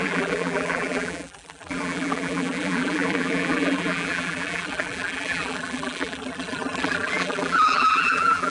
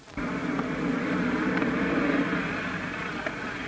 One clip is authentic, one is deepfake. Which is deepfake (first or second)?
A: first